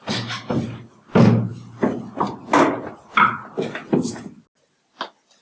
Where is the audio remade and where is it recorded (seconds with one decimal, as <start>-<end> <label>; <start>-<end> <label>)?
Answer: 0.0-5.4 recorded